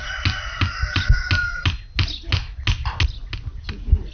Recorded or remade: recorded